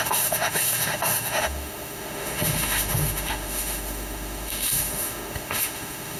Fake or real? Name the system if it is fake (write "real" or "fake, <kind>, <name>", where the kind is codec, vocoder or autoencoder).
fake, autoencoder, DAC-VAE